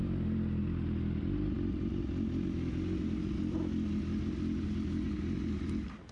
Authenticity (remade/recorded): recorded